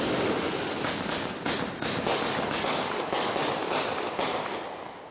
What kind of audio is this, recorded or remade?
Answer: recorded